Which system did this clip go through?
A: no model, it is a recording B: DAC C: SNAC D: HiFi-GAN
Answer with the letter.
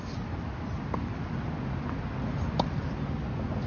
A